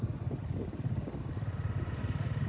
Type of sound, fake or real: real